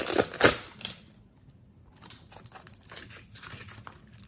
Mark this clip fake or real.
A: real